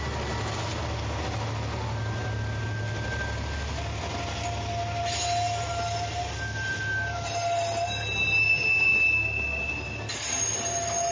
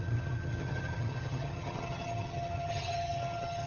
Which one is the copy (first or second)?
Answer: second